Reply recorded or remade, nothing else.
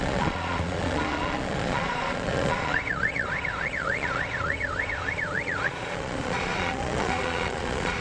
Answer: remade